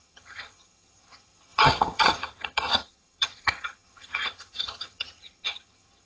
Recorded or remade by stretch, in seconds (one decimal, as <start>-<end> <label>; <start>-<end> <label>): 0.0-6.1 remade